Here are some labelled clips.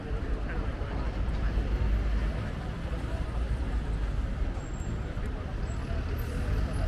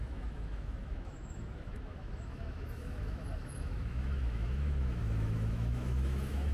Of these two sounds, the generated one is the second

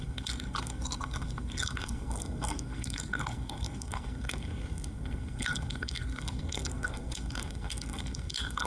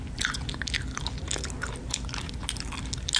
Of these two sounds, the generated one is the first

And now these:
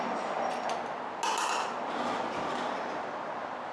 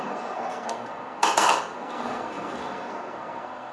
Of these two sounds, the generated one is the second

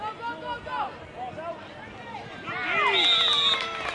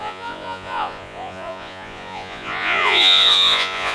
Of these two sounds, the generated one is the second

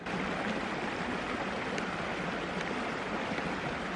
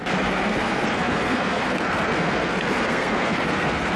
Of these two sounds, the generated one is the second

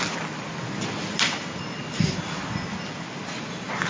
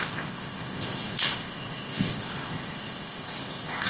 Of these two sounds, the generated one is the second